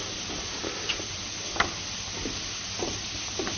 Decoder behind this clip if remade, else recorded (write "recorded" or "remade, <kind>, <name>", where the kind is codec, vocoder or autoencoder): recorded